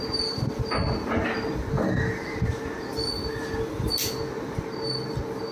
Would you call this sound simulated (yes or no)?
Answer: no